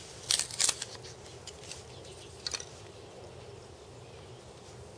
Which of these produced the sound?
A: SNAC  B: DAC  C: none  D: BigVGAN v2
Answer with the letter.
C